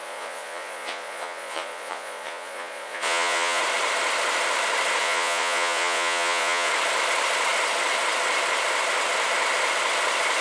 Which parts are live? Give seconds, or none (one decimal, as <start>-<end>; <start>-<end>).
3.6-5.0; 6.7-10.4